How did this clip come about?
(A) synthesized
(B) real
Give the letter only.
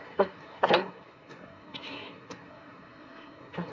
A